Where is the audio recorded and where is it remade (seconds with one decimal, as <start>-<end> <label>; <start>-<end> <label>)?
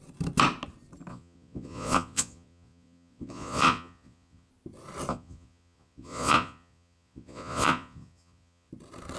0.0-1.1 recorded; 1.1-4.5 remade; 4.5-5.1 recorded; 5.1-8.7 remade; 8.7-9.2 recorded